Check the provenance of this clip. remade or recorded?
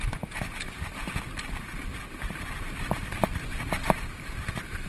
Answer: remade